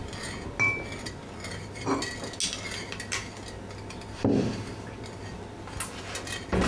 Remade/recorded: recorded